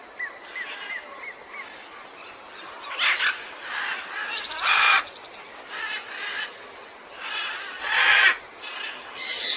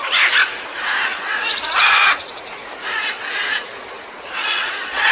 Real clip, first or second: first